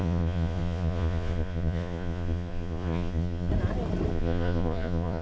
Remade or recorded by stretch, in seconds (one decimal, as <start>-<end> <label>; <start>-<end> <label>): 0.0-3.5 remade; 3.5-4.1 recorded; 4.1-5.2 remade